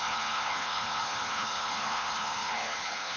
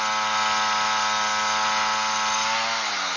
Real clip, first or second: second